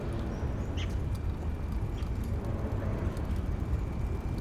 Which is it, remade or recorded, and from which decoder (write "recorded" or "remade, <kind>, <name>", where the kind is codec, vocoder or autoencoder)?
recorded